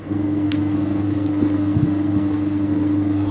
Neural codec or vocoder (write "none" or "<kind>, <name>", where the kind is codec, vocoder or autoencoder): codec, SNAC